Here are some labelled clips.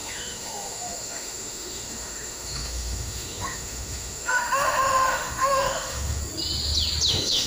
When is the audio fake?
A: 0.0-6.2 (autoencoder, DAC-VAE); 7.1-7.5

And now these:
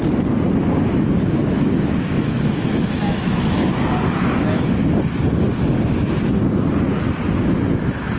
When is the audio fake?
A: 1.4-3.9 (autoencoder, DAC-VAE)

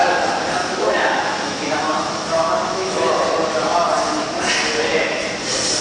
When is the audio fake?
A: 0.6-3.1 (autoencoder, DAC-VAE)

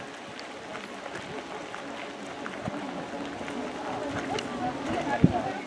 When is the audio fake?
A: none

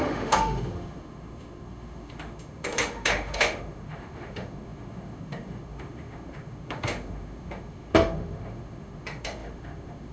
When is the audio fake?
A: 0.0-10.1 (autoencoder, DAC-VAE)

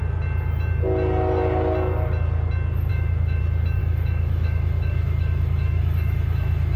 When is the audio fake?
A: 2.9-3.4 (autoencoder, DAC-VAE); 3.8-6.8

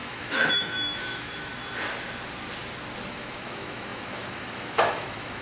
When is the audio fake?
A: 0.0-1.5 (autoencoder, DAC-VAE); 3.1-5.4

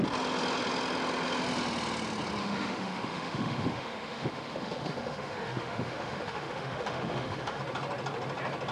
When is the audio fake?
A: 2.4-7.6 (autoencoder, DAC-VAE)